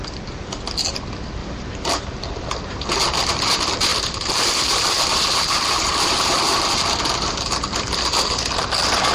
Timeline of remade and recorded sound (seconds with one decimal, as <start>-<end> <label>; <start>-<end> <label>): 0.0-1.4 recorded; 1.4-2.3 remade; 2.3-3.9 recorded; 3.9-7.0 remade; 7.0-9.1 recorded